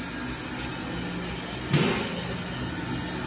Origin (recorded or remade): recorded